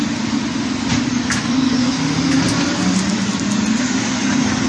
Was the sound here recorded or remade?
recorded